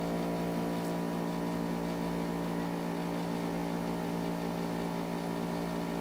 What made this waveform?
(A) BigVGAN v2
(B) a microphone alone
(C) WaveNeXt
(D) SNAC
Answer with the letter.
B